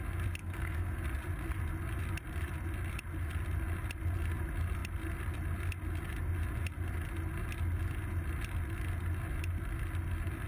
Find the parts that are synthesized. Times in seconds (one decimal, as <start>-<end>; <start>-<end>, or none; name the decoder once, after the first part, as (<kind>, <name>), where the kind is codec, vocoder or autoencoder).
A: 0.4-1.0 (codec, SNAC)